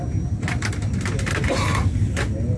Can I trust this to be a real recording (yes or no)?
yes